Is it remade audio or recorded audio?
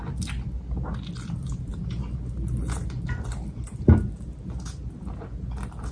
recorded